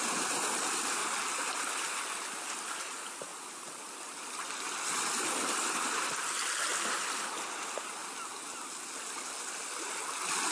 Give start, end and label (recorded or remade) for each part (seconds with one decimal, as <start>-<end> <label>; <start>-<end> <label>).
0.0-10.5 recorded